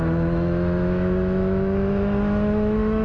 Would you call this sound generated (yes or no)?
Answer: yes